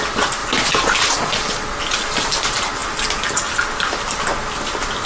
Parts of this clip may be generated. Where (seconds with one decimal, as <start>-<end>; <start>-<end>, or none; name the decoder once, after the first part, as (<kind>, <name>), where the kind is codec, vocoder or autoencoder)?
none